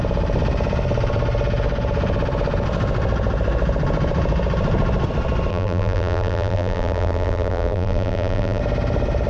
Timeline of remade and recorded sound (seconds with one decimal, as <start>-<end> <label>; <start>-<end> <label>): 0.0-5.5 recorded; 5.5-8.6 remade; 8.6-9.3 recorded